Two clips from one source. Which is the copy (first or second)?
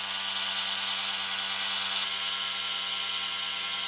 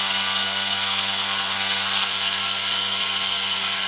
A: second